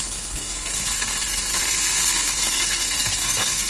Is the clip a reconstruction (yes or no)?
yes